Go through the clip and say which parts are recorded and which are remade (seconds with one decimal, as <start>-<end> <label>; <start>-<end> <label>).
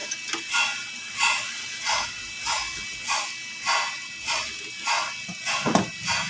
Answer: 0.0-6.3 recorded